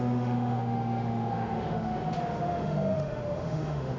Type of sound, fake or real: fake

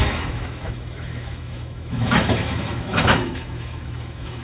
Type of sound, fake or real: fake